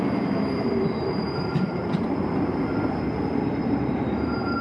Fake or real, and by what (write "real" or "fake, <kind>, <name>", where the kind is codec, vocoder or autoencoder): fake, vocoder, BigVGAN v2